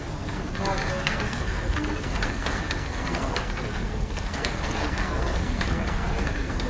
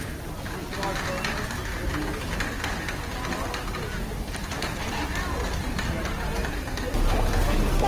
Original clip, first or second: second